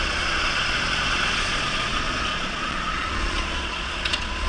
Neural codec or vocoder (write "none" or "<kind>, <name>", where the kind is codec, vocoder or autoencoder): vocoder, Vocos